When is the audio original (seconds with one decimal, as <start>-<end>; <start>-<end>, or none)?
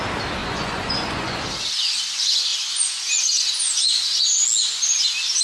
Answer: 0.0-0.4; 1.4-2.5; 4.2-5.4